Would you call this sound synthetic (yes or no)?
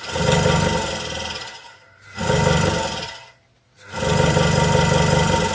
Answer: no